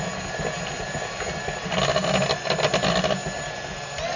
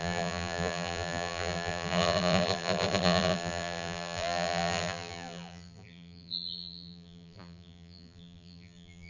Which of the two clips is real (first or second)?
first